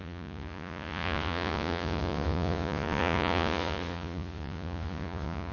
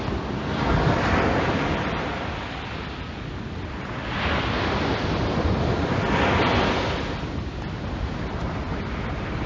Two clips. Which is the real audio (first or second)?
second